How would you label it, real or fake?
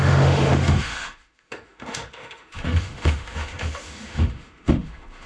fake